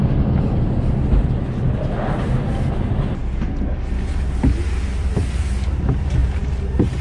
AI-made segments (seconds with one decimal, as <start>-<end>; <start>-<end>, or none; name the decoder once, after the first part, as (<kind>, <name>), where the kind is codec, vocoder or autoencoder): none

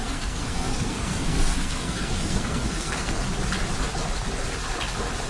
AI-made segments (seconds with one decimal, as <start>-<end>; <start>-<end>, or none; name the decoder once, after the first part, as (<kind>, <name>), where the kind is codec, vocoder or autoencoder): 0.0-3.2 (codec, SNAC)

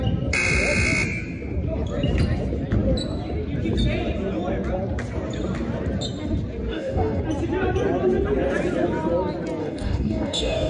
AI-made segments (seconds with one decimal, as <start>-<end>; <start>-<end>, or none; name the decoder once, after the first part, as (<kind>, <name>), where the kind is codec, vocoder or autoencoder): 6.7-7.2 (codec, DAC); 9.6-10.7

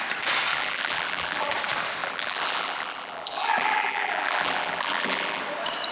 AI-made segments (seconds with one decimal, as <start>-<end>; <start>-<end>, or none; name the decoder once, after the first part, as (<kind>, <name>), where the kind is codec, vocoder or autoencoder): 0.5-1.5 (vocoder, BigVGAN v2); 2.0-5.4

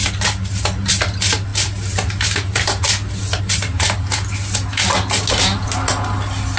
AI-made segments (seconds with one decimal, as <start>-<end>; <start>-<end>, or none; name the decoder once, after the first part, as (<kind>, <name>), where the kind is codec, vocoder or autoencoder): none

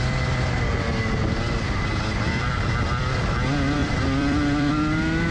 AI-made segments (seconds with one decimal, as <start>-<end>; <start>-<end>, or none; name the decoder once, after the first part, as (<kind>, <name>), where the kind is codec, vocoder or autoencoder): 1.9-3.2 (vocoder, BigVGAN v2); 3.8-4.7

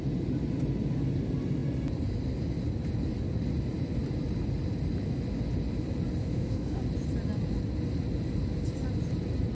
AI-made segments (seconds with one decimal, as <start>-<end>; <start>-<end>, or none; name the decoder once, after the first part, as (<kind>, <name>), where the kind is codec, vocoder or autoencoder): 6.2-6.8 (autoencoder, DAC-VAE)